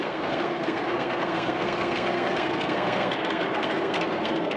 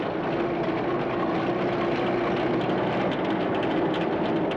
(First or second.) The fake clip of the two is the first